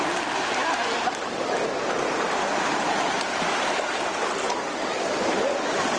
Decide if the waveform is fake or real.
real